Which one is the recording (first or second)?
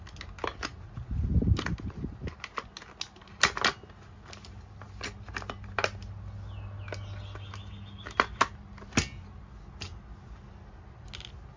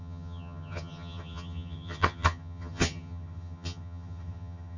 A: first